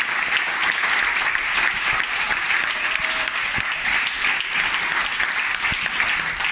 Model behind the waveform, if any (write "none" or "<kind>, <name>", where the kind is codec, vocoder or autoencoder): none